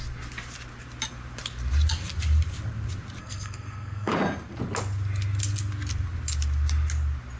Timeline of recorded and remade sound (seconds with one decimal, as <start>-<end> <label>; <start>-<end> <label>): 0.0-3.2 recorded; 3.2-4.1 remade; 4.1-7.4 recorded